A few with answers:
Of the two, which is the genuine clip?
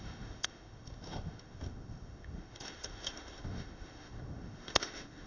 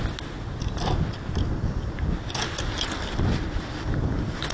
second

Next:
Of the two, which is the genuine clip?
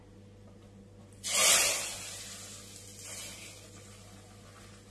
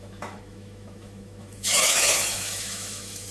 first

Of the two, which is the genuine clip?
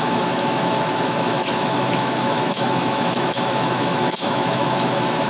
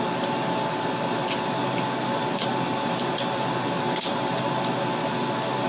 second